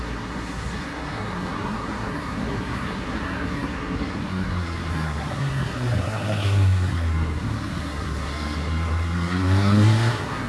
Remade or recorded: remade